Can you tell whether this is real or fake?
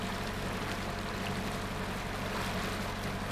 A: real